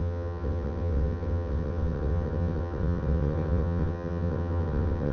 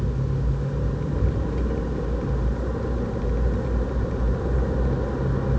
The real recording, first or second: second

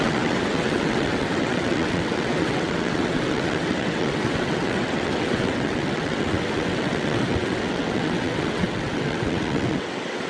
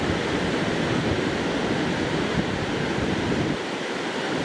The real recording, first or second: second